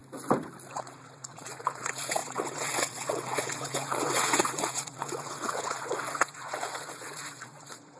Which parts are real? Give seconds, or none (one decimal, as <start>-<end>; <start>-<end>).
0.0-0.7